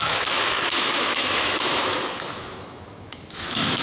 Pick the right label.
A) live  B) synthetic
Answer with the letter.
B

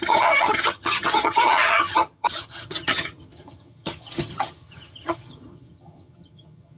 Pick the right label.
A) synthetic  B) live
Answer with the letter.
A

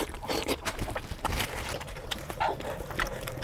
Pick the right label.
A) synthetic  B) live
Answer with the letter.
A